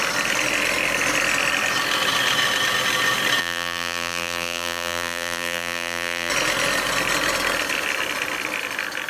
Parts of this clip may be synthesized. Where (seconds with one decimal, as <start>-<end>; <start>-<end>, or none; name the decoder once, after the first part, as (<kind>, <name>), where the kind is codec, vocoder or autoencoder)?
3.4-6.3 (vocoder, BigVGAN v2)